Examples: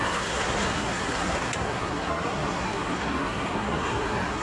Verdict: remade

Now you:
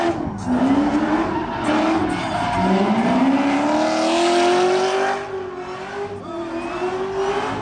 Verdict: recorded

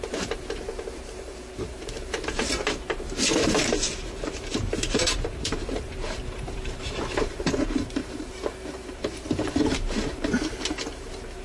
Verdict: remade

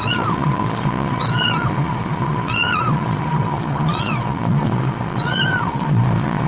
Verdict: remade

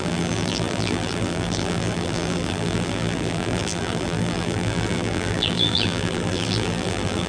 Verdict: remade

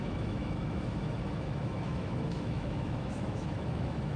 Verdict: remade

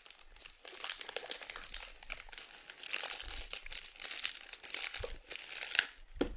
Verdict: recorded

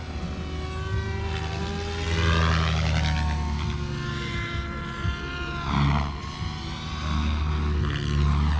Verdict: recorded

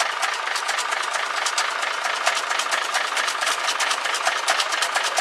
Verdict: recorded